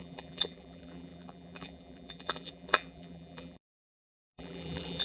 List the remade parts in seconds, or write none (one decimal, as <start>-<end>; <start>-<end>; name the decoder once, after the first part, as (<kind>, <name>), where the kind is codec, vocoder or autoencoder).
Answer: 0.0-5.0 (vocoder, BigVGAN v2)